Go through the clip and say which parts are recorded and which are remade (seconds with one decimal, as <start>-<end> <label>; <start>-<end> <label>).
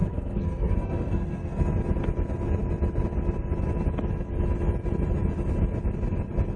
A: 0.0-1.6 remade; 1.6-6.6 recorded